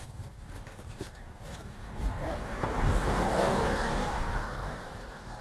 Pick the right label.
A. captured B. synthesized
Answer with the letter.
B